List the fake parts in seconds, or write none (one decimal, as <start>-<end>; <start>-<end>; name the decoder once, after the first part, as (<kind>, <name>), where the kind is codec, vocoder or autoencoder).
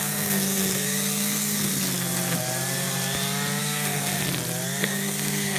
0.0-1.7 (codec, SNAC); 3.6-4.2; 4.8-5.6